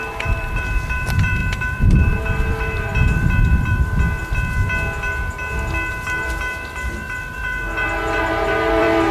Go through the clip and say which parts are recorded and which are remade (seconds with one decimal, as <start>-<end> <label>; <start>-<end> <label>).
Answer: 0.0-4.2 remade; 4.2-5.9 recorded; 5.9-9.1 remade

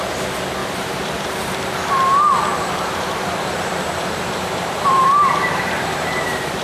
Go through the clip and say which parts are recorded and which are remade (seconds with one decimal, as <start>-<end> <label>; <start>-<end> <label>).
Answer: 0.0-0.6 recorded; 0.6-1.3 remade; 1.3-2.5 recorded; 2.5-6.6 remade

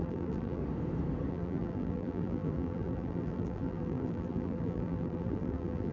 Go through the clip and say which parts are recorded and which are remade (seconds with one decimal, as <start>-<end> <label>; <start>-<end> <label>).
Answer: 0.0-0.6 remade; 0.6-1.3 recorded; 1.3-5.9 remade

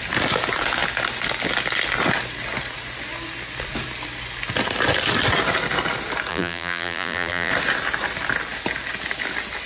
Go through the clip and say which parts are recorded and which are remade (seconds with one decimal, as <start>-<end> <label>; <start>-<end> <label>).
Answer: 0.0-6.3 recorded; 6.3-7.5 remade; 7.5-9.7 recorded

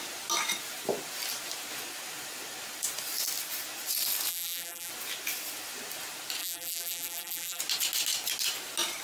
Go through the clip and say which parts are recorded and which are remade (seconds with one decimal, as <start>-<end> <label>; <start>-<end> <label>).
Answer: 0.0-4.3 recorded; 4.3-4.9 remade; 4.9-6.4 recorded; 6.4-7.6 remade; 7.6-9.0 recorded